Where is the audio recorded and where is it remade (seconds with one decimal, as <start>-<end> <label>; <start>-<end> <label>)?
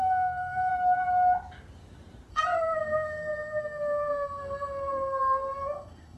0.0-0.7 remade; 0.7-2.3 recorded; 2.3-6.2 remade